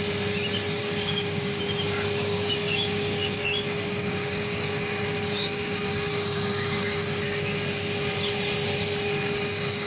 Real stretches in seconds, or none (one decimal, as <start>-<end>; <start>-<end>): 0.0-0.8; 1.6-2.3; 7.2-9.9